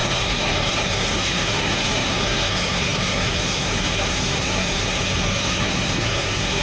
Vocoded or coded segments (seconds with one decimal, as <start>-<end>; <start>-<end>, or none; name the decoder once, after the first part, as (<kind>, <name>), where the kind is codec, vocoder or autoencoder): 0.0-6.6 (codec, SNAC)